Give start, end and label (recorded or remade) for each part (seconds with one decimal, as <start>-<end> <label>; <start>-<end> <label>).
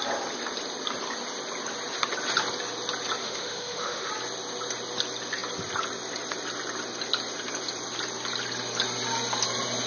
0.0-3.2 recorded; 3.2-4.1 remade; 4.1-9.9 recorded